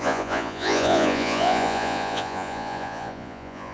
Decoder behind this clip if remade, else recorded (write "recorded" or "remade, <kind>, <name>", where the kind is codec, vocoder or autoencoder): remade, vocoder, Vocos